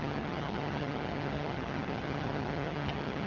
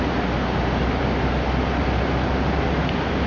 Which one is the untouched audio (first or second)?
second